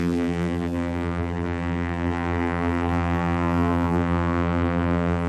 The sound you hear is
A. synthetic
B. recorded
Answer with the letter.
A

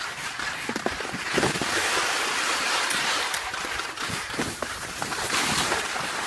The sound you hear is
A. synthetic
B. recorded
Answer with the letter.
A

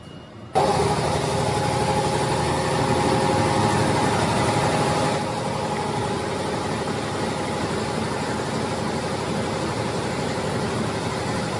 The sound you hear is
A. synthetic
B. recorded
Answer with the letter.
B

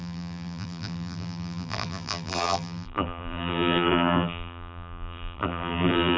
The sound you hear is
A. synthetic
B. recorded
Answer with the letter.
A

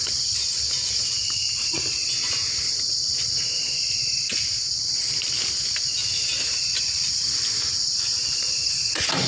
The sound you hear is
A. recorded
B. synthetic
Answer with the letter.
A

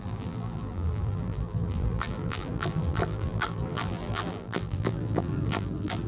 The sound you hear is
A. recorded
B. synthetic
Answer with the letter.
B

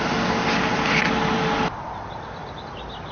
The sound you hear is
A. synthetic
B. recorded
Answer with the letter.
A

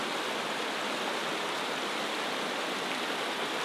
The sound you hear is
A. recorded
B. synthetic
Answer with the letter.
A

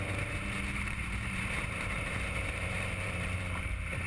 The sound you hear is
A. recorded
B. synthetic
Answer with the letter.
B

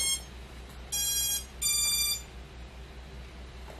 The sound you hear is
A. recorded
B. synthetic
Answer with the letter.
A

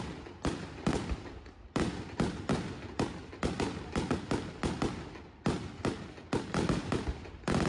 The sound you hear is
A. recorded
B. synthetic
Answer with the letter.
A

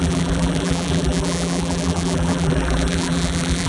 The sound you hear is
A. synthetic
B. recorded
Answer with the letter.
A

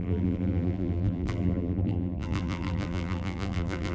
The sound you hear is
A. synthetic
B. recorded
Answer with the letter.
A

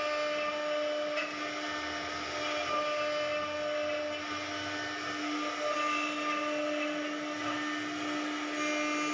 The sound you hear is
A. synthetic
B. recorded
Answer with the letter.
B